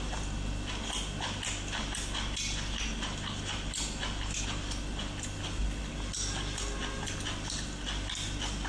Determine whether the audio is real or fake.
real